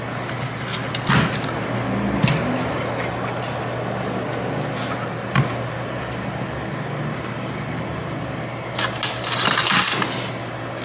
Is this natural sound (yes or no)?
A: yes